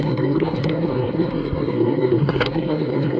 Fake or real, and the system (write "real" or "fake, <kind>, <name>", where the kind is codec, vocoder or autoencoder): fake, codec, SNAC